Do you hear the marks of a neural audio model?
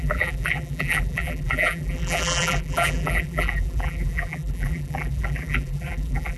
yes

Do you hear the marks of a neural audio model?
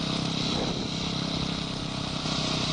no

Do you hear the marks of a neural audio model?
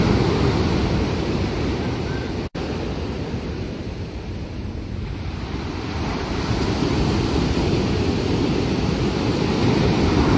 yes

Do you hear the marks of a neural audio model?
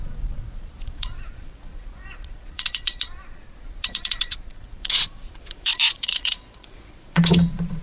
yes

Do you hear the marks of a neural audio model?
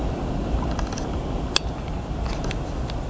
no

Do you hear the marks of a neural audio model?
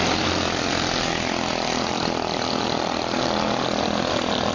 no